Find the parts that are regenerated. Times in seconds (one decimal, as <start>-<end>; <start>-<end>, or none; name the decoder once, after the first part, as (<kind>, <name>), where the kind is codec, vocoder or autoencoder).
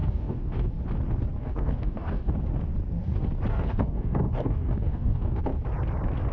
0.0-0.7 (codec, DAC); 1.4-2.3; 3.5-5.4